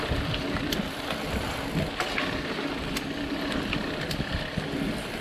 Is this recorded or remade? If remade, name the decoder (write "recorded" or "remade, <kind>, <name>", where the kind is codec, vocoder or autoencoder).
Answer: recorded